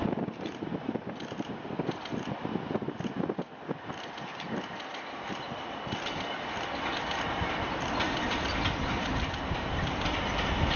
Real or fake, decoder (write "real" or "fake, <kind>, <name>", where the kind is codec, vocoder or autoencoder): real